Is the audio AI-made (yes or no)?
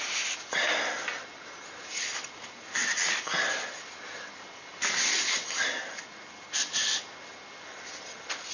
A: no